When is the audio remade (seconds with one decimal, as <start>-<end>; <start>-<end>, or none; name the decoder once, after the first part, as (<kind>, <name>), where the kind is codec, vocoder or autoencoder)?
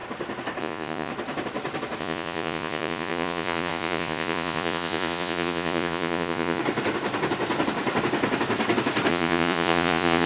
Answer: 0.6-1.1 (vocoder, Vocos); 2.0-6.6; 9.1-10.3